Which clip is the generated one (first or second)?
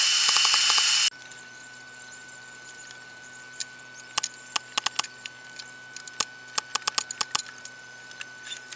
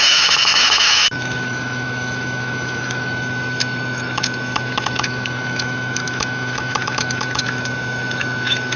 second